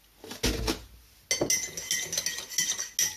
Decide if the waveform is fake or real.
real